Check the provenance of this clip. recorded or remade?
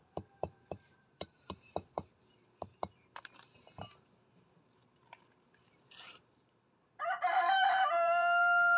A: remade